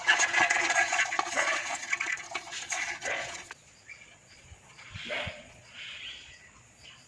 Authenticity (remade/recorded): remade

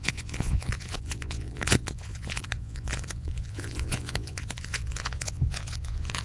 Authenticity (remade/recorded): remade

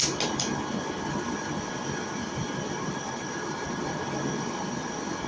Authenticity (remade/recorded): recorded